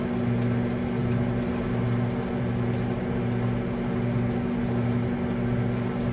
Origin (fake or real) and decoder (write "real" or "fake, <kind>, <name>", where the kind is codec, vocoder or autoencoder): real